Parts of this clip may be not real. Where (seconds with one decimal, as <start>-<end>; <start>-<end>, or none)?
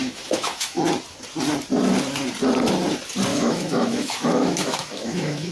0.0-0.8; 3.3-5.5